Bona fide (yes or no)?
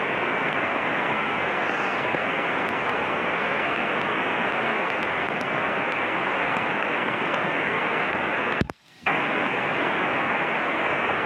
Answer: no